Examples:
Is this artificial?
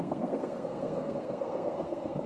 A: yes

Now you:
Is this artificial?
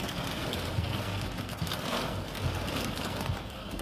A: yes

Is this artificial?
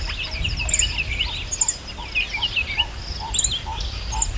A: no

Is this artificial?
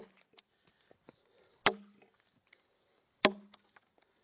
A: no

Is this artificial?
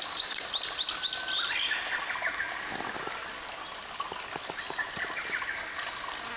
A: no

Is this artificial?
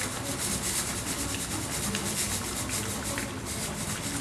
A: no